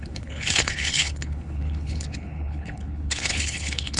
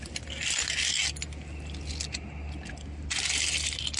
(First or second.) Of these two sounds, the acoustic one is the second